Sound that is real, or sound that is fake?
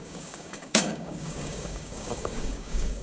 fake